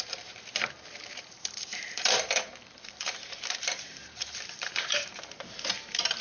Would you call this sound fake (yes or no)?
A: yes